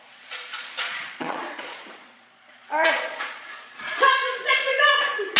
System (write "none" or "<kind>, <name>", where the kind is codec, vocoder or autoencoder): vocoder, Vocos